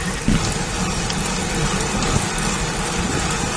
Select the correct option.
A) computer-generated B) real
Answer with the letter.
B